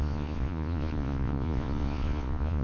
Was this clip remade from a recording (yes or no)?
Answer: yes